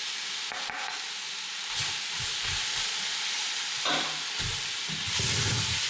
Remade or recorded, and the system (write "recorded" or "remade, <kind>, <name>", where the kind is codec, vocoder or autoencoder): recorded